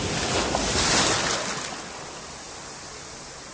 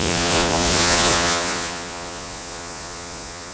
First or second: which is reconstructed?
second